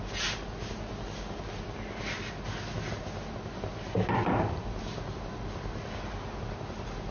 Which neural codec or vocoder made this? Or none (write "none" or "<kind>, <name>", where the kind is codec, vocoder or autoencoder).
none